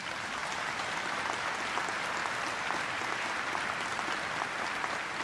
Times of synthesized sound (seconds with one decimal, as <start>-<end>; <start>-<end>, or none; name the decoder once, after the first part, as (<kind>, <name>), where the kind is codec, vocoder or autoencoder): none